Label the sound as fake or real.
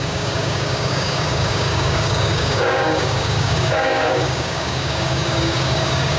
fake